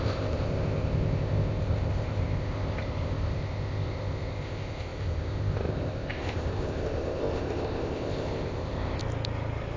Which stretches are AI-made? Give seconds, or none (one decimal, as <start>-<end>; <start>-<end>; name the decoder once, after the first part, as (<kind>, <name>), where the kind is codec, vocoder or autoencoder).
0.0-9.0 (codec, ZipCodec)